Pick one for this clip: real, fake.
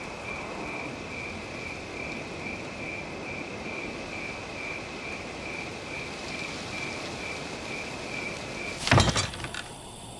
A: real